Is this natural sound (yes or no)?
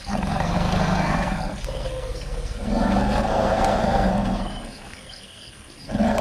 no